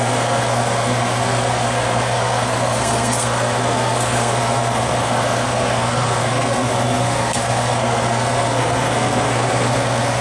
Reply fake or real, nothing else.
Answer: fake